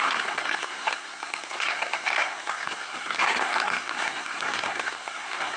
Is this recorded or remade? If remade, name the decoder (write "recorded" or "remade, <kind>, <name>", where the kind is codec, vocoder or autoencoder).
remade, codec, SNAC